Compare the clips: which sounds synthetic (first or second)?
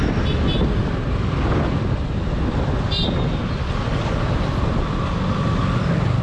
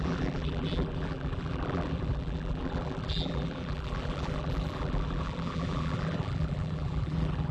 second